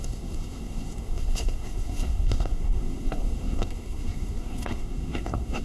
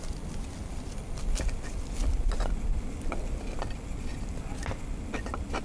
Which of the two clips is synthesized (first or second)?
first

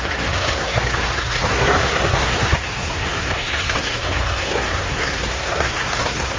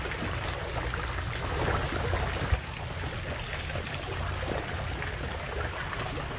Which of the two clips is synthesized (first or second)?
first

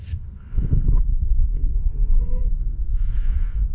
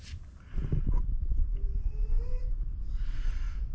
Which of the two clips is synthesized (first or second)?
first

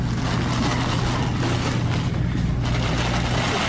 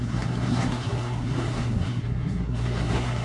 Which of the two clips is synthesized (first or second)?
second